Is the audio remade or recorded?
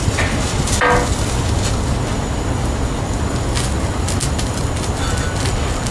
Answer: recorded